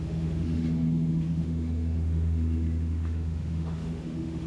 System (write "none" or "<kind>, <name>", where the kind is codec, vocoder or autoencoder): autoencoder, DAC-VAE